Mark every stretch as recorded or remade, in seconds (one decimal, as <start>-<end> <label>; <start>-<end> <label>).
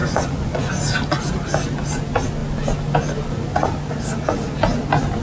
0.0-0.7 remade; 0.7-5.2 recorded